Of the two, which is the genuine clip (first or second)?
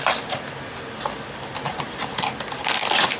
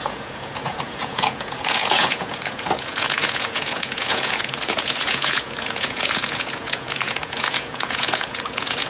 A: first